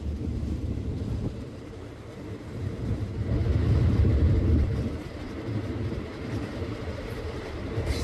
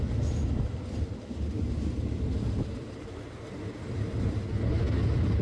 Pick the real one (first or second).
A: second